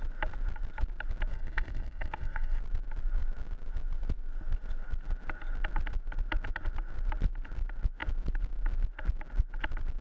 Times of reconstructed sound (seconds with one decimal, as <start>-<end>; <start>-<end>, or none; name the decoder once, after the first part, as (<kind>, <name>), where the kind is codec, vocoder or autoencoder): 1.3-2.6 (codec, SNAC)